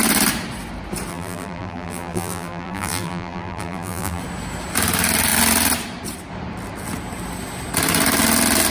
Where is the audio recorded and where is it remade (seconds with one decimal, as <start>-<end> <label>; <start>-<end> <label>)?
0.0-1.1 recorded; 1.1-4.2 remade; 4.2-8.7 recorded